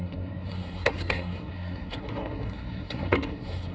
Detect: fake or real fake